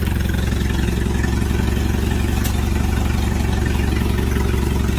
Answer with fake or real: real